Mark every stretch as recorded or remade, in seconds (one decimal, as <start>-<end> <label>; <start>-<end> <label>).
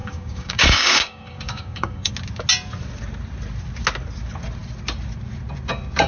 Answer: 0.0-2.1 remade; 2.1-6.1 recorded